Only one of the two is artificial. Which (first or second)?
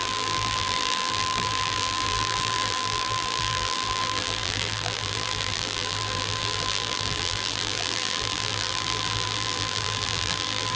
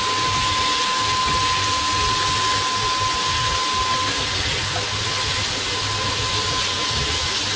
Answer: first